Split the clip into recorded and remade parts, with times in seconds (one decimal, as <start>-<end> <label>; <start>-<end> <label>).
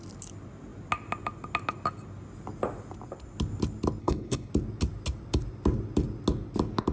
0.0-4.0 recorded; 4.0-4.5 remade; 4.5-6.9 recorded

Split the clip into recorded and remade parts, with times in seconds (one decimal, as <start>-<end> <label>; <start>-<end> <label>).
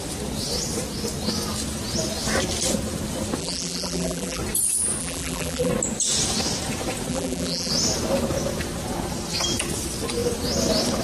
0.0-3.4 recorded; 3.4-4.4 remade; 4.4-5.0 recorded; 5.0-5.7 remade; 5.7-7.1 recorded; 7.1-7.7 remade; 7.7-11.0 recorded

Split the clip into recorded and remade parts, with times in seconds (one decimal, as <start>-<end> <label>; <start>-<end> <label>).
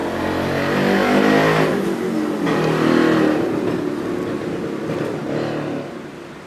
0.0-6.5 recorded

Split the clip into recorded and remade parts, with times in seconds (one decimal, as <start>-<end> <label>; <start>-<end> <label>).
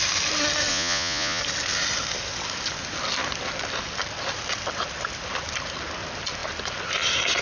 0.0-0.7 recorded; 0.7-1.4 remade; 1.4-7.4 recorded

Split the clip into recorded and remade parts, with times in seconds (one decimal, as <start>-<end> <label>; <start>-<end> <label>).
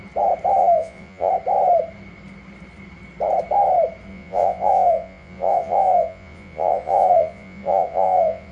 0.0-0.6 recorded; 0.6-1.3 remade; 1.3-4.1 recorded; 4.1-8.5 remade